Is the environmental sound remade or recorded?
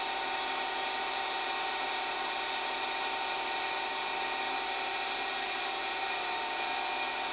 recorded